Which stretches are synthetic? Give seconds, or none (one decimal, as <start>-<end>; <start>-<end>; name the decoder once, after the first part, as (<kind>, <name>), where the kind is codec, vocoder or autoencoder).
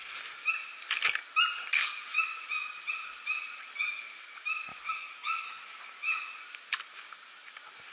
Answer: 4.7-5.8 (autoencoder, DAC-VAE)